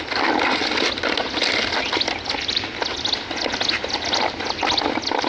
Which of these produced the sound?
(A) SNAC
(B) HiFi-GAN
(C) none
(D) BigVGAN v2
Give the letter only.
C